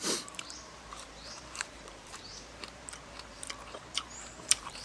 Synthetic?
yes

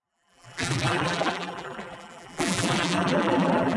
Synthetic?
yes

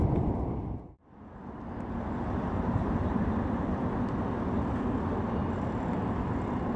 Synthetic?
no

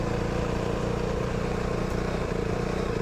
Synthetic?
yes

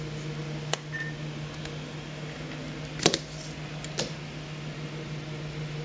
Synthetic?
no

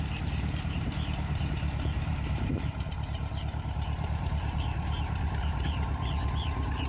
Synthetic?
yes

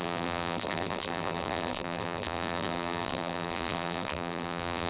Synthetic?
yes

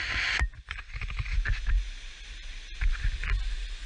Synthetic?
no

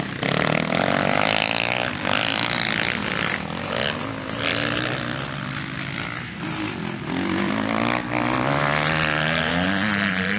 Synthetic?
no